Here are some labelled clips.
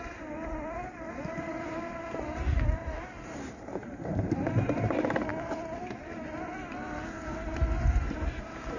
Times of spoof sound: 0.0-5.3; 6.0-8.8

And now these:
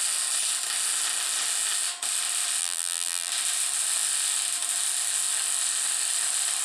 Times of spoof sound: 2.6-3.3